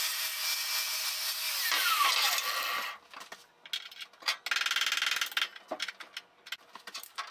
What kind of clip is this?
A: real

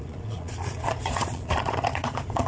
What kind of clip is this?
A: fake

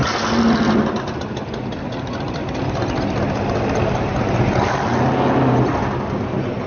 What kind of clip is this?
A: real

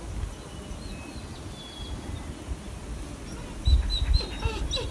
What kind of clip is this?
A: real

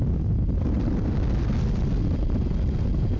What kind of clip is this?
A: real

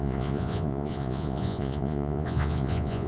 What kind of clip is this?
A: fake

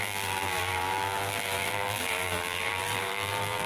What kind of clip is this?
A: fake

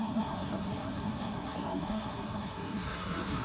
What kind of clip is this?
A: fake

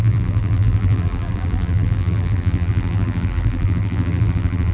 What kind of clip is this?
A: fake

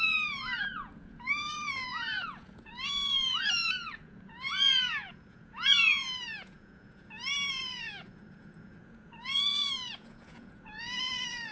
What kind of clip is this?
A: fake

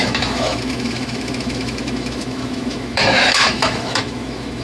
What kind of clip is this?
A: fake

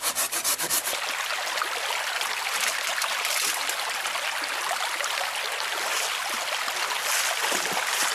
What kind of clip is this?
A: real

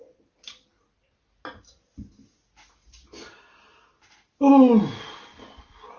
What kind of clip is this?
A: real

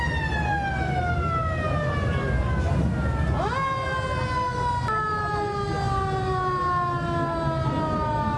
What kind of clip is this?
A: real